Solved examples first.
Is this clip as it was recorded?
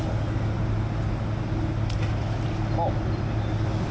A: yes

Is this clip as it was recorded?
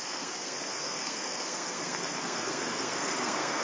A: no